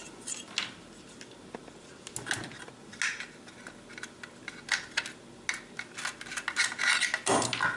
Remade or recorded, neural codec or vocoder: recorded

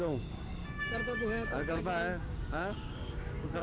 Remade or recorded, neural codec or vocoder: remade, codec, DAC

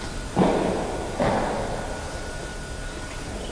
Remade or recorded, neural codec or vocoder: recorded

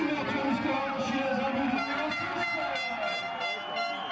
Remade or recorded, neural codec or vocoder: recorded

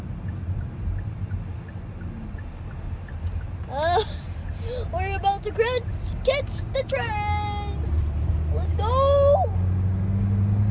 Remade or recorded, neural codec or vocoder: recorded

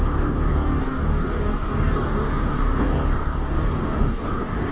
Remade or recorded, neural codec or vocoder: remade, codec, DAC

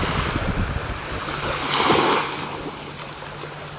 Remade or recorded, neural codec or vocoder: recorded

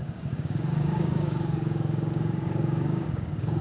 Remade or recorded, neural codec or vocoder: remade, codec, DAC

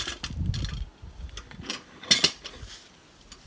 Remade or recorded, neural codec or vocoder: recorded